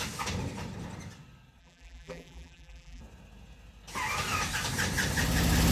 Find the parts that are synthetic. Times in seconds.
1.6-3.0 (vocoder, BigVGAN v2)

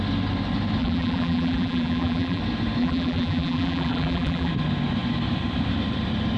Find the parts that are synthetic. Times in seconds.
0.8-2.4 (vocoder, BigVGAN v2); 2.8-4.5

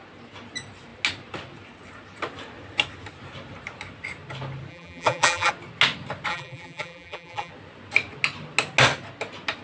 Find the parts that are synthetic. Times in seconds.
4.7-5.5 (vocoder, BigVGAN v2); 6.3-7.5